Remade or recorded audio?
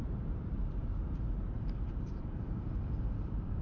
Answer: remade